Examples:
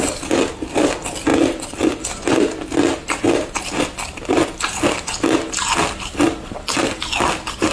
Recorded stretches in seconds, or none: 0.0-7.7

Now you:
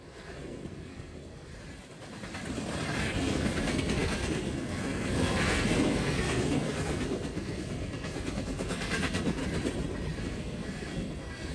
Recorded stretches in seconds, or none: 1.5-3.0; 9.4-10.2

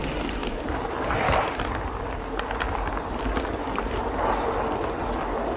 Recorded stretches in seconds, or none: 0.0-0.4; 3.2-5.6

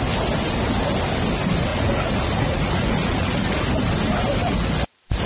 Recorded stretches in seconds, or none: 0.0-1.7; 3.6-4.4

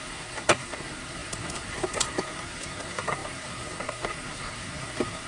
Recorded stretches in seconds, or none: none

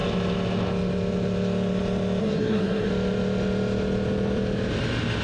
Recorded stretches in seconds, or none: 0.0-2.2; 2.9-5.2

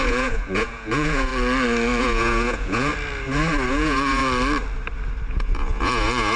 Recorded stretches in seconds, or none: 1.3-2.0; 2.9-3.7; 4.2-5.3

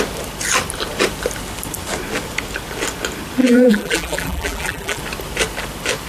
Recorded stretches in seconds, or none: 0.0-3.4; 5.0-6.1